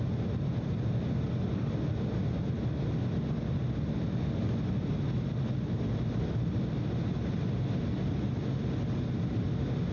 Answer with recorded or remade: recorded